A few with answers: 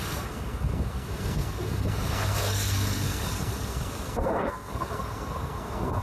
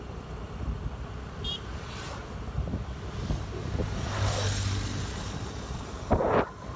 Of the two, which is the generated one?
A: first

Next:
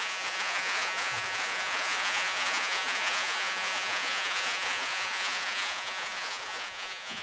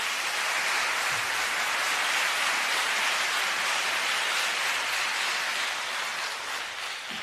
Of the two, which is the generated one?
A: first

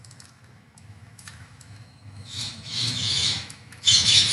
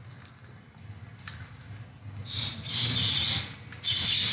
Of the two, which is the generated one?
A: first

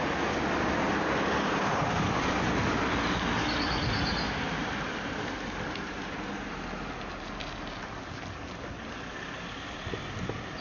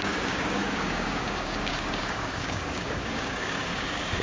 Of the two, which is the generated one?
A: second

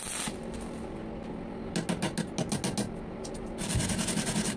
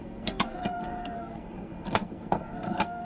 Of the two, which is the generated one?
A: second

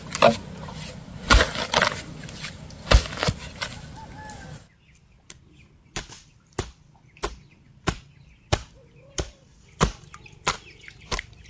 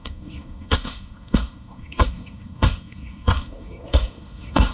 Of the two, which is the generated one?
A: second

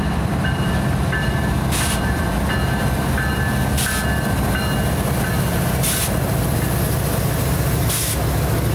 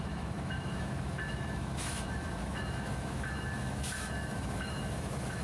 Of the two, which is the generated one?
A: second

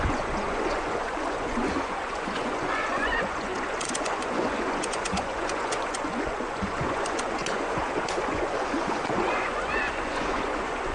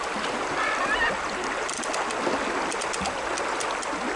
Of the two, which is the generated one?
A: first